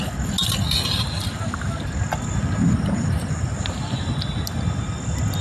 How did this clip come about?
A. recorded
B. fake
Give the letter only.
A